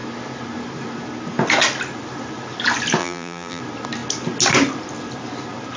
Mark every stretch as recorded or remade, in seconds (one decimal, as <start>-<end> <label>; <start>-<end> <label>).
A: 0.0-3.0 recorded; 3.0-3.6 remade; 3.6-5.8 recorded